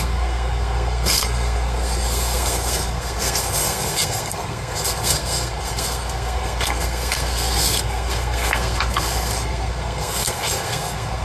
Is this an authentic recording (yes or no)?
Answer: no